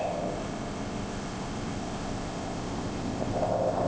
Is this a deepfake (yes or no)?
yes